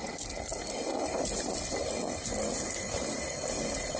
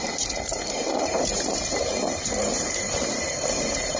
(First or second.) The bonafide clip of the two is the first